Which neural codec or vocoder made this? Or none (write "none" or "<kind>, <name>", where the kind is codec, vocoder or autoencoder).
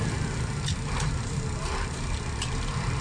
none